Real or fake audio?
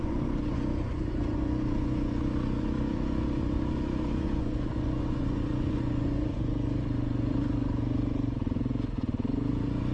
fake